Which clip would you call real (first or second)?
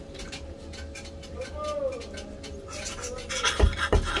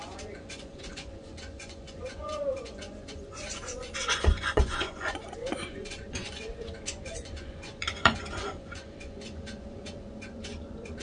first